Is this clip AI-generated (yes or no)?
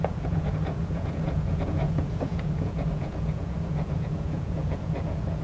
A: yes